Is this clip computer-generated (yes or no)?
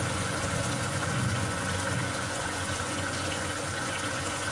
yes